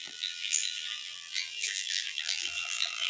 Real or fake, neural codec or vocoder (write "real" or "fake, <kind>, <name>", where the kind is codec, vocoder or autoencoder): fake, vocoder, BigVGAN v2